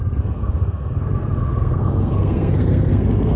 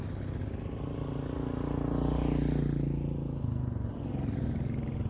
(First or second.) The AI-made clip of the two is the first